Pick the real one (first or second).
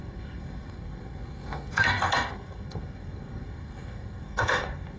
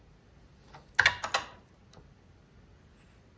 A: second